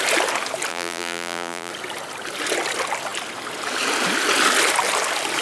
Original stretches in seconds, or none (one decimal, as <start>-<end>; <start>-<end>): 0.0-0.7; 1.7-5.4